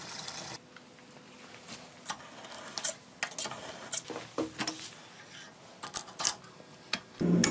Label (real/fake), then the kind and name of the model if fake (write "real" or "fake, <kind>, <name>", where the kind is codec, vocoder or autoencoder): real